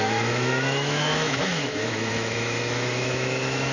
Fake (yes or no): yes